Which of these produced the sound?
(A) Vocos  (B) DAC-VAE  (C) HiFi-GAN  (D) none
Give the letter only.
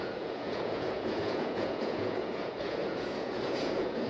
A